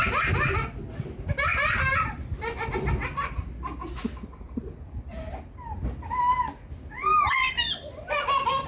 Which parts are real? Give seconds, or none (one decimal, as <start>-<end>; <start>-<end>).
0.0-1.5; 2.7-8.7